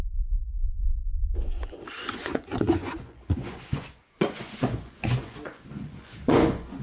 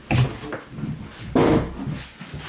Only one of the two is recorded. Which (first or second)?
second